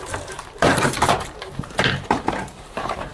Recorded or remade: remade